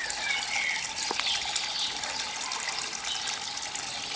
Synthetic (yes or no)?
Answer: no